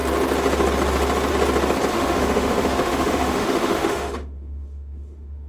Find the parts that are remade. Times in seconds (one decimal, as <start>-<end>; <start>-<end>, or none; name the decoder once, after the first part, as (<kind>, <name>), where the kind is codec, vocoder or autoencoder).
1.9-5.5 (autoencoder, DAC-VAE)